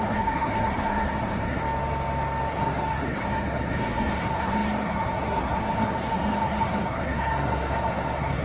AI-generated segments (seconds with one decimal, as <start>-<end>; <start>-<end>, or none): 0.0-1.6; 2.5-8.4

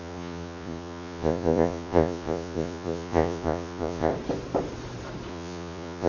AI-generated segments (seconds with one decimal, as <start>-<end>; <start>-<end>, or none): 0.0-4.1; 5.3-6.1

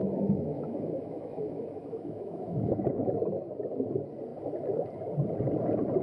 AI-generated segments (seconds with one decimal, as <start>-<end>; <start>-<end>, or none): 0.0-3.1

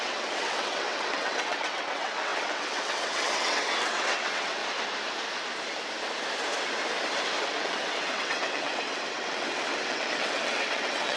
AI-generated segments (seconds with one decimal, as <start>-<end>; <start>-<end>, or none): 0.0-4.6; 7.4-11.2

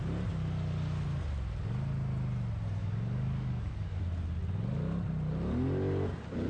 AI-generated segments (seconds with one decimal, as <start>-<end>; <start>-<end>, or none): 2.8-4.0

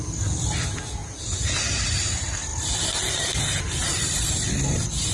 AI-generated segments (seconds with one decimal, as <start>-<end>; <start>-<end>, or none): none

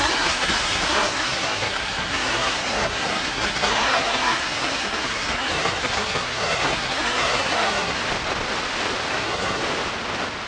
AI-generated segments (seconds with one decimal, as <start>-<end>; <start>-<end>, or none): 0.0-8.0; 9.1-9.6

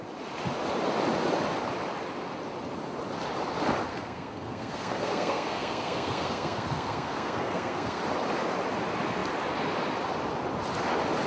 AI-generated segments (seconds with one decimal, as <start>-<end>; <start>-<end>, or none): 3.9-8.0